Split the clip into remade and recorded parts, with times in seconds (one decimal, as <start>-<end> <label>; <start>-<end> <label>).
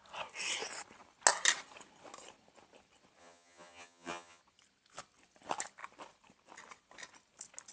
0.0-3.2 recorded; 3.2-4.4 remade; 4.4-7.7 recorded